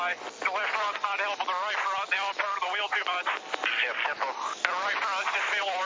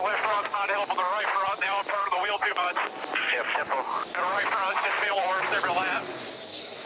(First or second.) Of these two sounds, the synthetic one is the second